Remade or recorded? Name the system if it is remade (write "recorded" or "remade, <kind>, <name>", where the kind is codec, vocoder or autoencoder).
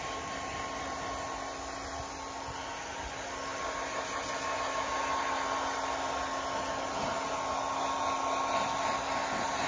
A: recorded